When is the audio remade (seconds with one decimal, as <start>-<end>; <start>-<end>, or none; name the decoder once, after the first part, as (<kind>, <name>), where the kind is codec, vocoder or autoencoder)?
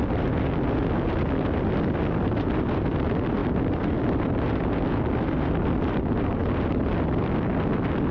none